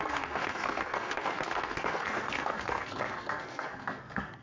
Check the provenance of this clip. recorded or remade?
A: remade